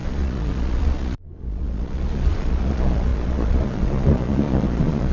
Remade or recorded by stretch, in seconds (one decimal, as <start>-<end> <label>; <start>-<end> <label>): 0.0-5.1 remade

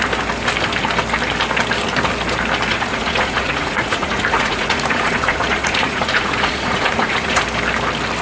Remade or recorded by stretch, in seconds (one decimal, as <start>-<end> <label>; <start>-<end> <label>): 0.0-2.7 recorded; 2.7-7.4 remade; 7.4-8.2 recorded

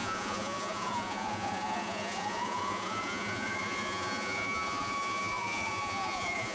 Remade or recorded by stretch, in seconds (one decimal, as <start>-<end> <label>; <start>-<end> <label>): 0.0-6.5 remade